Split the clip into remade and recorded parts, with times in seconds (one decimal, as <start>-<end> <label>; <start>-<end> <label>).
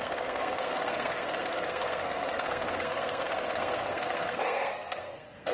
0.0-5.5 remade